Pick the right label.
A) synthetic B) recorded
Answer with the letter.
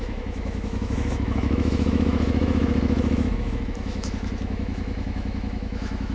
A